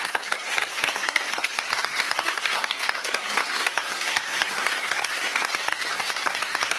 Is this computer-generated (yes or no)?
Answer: yes